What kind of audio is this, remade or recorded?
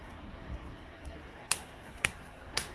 remade